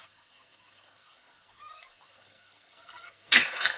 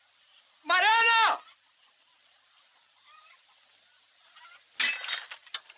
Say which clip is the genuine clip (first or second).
second